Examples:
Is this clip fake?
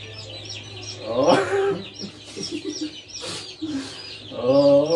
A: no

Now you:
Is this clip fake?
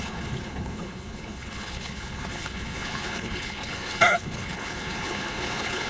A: yes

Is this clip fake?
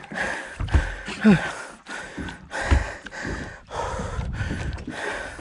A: no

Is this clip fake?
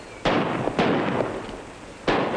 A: no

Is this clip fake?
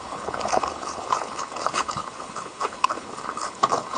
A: yes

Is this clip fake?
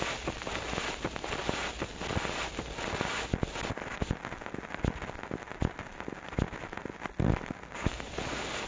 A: no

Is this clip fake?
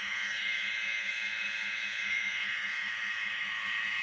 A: yes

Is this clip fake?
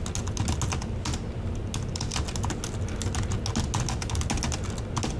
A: no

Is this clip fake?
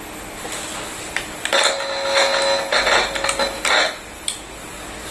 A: no